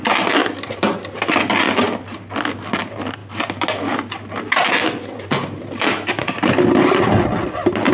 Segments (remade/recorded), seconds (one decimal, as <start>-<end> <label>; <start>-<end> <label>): 0.0-7.9 recorded